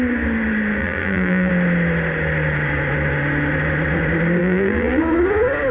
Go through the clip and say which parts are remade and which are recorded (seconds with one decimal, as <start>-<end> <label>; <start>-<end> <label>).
0.0-0.8 recorded; 0.8-1.5 remade; 1.5-4.4 recorded; 4.4-5.0 remade; 5.0-5.7 recorded